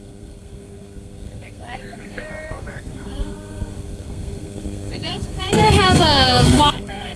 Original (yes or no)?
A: no